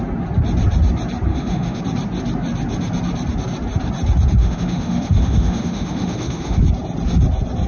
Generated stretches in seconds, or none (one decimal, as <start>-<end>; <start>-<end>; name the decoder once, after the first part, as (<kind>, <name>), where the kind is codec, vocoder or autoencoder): 1.3-1.8 (autoencoder, DAC-VAE); 4.4-6.6